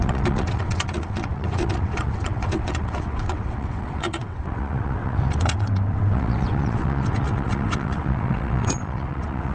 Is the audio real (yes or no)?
no